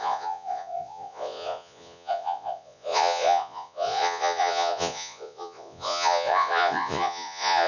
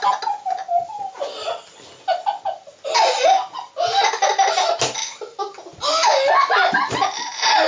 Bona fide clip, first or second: second